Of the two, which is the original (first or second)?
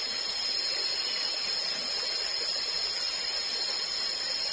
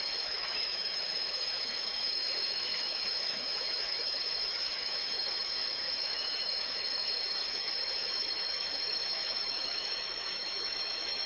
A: first